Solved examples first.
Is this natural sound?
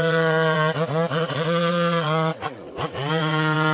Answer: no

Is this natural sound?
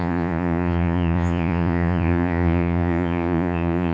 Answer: no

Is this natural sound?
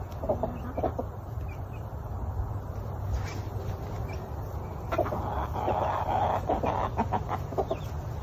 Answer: yes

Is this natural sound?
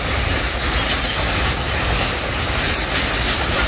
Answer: yes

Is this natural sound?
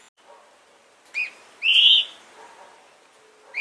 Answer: yes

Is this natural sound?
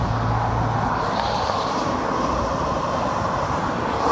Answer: yes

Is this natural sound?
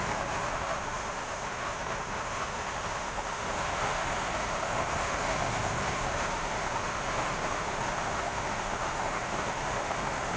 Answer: no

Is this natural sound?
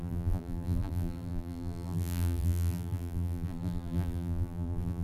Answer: no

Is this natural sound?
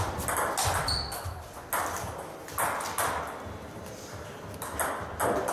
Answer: yes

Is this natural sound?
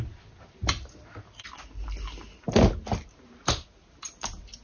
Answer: yes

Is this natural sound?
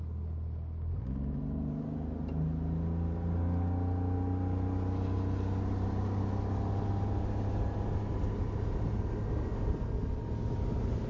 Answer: yes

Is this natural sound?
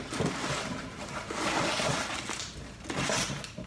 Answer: yes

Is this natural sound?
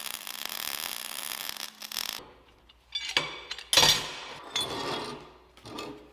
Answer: yes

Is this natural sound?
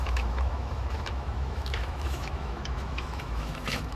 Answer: no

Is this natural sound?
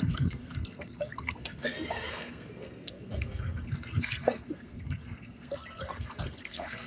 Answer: no